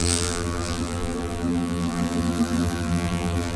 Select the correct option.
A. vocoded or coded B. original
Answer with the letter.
A